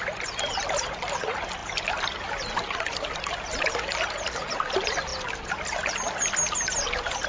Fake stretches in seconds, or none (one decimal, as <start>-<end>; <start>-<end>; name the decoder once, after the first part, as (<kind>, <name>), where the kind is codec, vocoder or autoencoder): none